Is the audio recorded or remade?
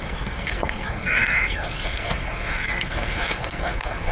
remade